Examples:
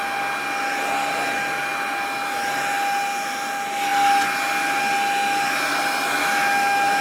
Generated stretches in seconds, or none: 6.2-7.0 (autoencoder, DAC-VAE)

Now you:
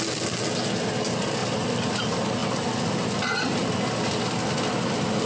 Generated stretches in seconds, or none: none

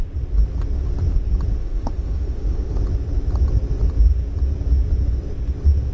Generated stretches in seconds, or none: 1.6-2.8 (autoencoder, DAC-VAE)

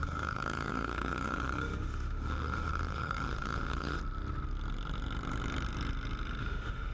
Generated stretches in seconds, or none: 0.0-4.0 (autoencoder, DAC-VAE); 6.4-6.9

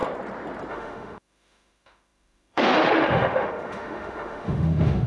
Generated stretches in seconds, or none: 0.7-5.1 (autoencoder, DAC-VAE)

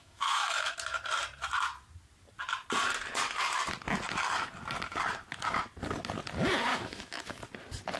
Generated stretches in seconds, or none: 0.0-0.7 (autoencoder, DAC-VAE); 6.7-7.4

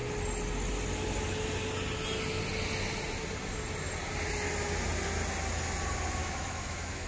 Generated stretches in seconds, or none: 6.2-7.1 (autoencoder, DAC-VAE)